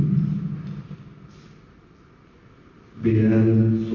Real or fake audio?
real